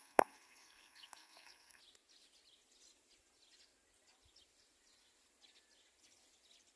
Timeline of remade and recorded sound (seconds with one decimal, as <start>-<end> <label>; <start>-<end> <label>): 0.0-1.8 remade; 1.8-6.8 recorded